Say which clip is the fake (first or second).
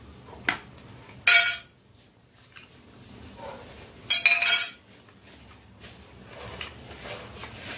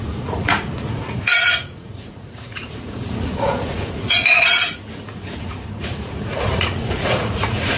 second